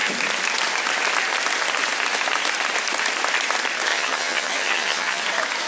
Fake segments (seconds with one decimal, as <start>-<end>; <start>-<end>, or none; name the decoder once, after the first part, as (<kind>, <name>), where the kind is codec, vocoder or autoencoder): 3.9-5.2 (vocoder, HiFi-GAN)